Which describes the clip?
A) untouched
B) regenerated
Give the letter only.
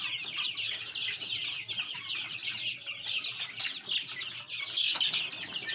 A